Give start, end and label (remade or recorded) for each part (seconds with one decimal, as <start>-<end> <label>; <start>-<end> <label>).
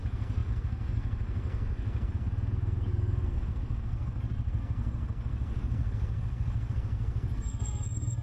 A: 0.0-8.2 remade